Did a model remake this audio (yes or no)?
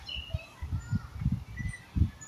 no